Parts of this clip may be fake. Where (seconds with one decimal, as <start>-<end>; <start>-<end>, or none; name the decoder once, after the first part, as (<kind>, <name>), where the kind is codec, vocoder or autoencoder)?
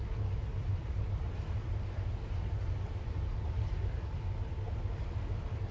0.6-4.0 (vocoder, BigVGAN v2)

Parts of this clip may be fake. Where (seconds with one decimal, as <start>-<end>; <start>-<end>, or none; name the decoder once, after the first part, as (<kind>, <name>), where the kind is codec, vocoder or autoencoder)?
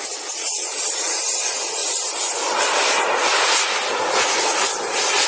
0.0-1.8 (vocoder, Vocos); 3.0-5.3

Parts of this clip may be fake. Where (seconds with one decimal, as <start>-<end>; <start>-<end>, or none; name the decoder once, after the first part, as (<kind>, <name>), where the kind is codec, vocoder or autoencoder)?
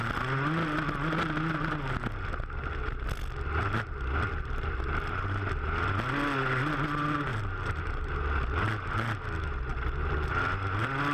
7.3-8.1 (vocoder, BigVGAN v2)